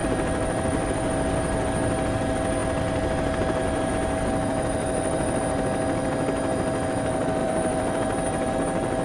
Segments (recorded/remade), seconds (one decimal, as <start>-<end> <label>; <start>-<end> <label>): 0.0-1.1 remade; 1.1-4.5 recorded; 4.5-5.4 remade; 5.4-7.4 recorded; 7.4-8.5 remade; 8.5-9.0 recorded